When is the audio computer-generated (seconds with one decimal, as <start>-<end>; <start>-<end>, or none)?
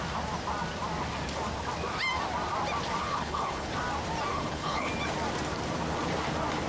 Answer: 3.0-3.7; 4.3-4.9